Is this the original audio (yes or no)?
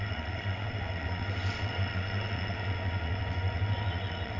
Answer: no